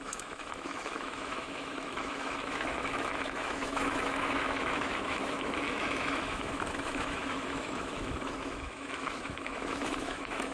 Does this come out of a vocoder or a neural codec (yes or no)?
yes